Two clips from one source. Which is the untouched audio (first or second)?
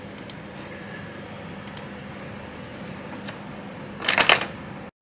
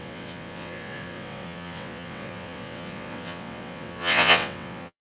first